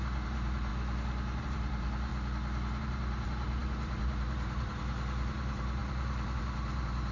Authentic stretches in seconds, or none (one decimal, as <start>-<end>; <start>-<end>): 0.7-1.4; 2.1-2.8